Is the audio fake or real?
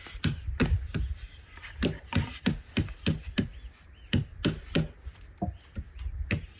real